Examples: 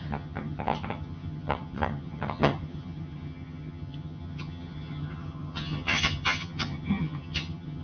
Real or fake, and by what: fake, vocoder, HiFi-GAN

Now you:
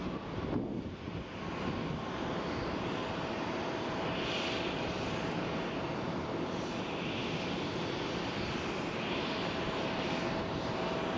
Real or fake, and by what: real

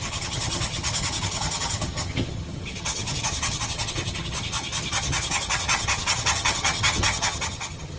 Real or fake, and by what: fake, vocoder, HiFi-GAN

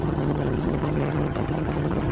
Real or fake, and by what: fake, vocoder, HiFi-GAN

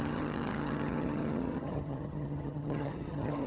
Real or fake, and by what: fake, vocoder, HiFi-GAN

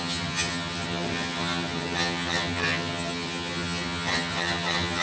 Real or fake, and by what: fake, vocoder, HiFi-GAN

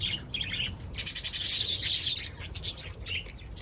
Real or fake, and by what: real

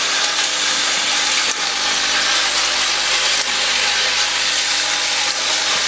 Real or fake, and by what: real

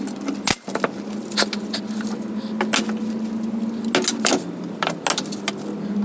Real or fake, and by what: real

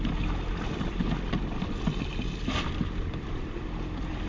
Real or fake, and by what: real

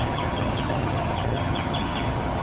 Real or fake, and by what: fake, vocoder, HiFi-GAN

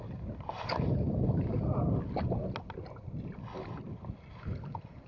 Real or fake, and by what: real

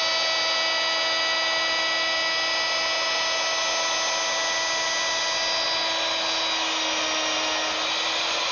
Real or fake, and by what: real